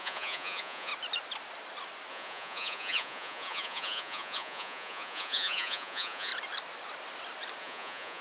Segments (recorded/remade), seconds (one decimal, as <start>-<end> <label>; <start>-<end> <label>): 0.0-0.9 remade; 0.9-2.1 recorded; 2.1-6.3 remade; 6.3-7.6 recorded; 7.6-8.2 remade